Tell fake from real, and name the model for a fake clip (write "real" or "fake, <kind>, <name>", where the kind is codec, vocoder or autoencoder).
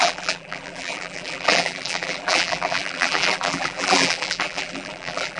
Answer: fake, vocoder, BigVGAN v2